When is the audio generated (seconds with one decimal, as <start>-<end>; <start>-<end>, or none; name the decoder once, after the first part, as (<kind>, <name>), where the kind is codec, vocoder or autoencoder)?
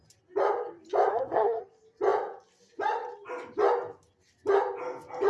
1.1-1.6 (codec, SNAC)